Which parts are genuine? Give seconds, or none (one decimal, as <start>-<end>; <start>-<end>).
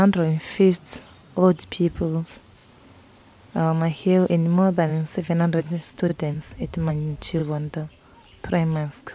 0.0-6.1; 6.9-9.1